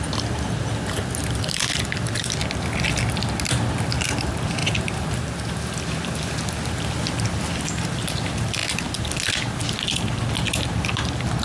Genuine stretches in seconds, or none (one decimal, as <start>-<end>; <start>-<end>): 0.0-11.4